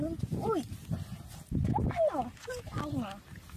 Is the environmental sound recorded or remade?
recorded